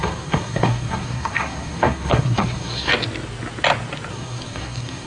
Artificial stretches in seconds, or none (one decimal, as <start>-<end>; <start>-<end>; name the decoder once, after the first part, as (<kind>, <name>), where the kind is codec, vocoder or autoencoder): 0.0-2.9 (codec, SNAC); 4.1-5.1